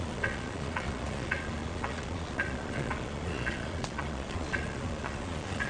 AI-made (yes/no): yes